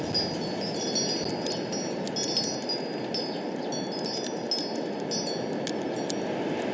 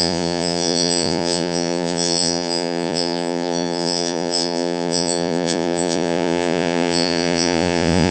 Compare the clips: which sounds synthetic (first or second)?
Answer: second